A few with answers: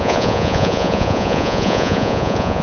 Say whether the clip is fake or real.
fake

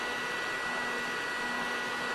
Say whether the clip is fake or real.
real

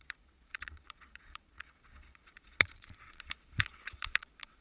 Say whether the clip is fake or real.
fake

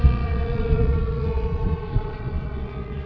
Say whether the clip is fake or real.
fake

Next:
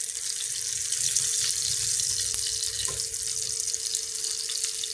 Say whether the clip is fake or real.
real